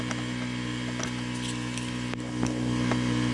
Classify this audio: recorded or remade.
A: recorded